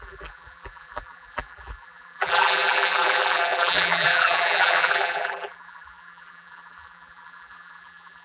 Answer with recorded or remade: remade